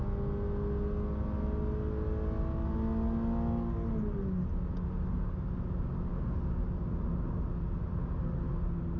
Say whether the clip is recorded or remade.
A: recorded